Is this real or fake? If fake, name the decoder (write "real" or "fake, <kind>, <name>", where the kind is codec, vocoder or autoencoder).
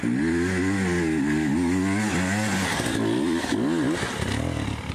real